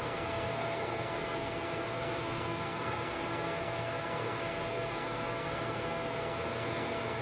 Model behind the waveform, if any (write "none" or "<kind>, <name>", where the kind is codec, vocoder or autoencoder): codec, SNAC